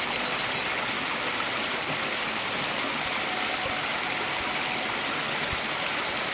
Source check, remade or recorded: recorded